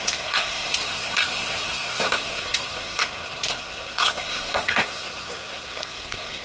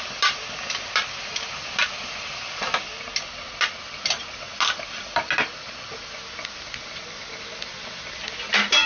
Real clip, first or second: second